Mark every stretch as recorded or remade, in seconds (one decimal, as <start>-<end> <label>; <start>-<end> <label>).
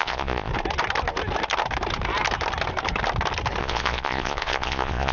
0.0-0.5 remade; 0.5-3.6 recorded; 3.6-5.1 remade